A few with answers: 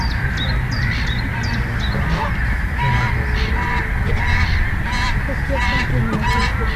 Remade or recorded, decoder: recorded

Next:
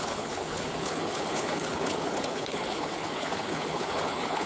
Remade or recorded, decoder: remade, codec, HILCodec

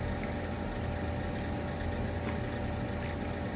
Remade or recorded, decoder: recorded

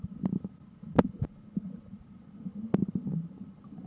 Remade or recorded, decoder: recorded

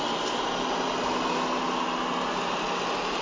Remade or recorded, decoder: recorded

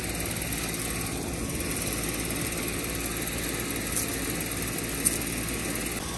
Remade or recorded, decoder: recorded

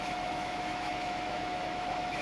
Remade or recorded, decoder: remade, autoencoder, DAC-VAE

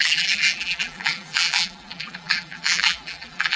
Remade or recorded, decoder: remade, vocoder, BigVGAN v2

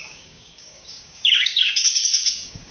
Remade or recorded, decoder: remade, codec, DAC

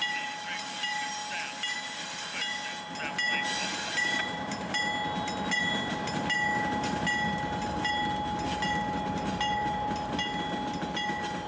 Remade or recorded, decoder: recorded